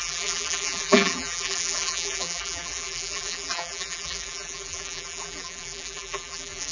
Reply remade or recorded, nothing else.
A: remade